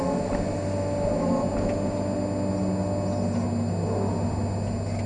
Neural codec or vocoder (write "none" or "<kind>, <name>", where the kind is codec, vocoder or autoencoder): none